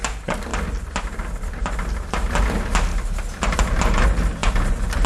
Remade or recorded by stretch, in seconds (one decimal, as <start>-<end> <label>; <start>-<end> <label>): 0.0-5.1 recorded